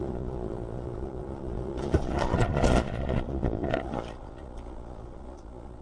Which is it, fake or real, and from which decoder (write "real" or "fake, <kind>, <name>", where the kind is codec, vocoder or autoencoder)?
fake, vocoder, Vocos